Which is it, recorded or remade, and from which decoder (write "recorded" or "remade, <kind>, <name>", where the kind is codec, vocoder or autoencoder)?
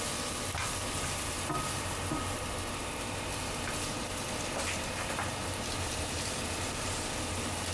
recorded